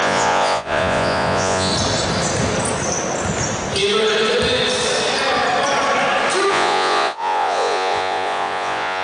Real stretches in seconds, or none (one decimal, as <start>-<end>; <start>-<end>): 1.7-6.5